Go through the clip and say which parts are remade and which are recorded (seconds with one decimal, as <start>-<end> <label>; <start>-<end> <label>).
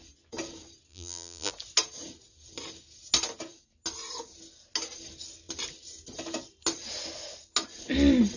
0.0-0.9 recorded; 0.9-1.5 remade; 1.5-8.4 recorded